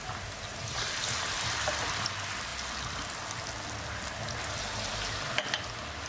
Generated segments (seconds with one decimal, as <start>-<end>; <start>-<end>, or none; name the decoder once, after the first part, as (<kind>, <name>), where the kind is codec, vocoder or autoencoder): none